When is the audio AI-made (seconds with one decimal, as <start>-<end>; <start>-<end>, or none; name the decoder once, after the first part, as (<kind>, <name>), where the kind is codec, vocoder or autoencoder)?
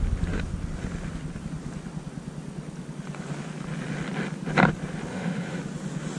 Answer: 5.1-5.6 (autoencoder, DAC-VAE)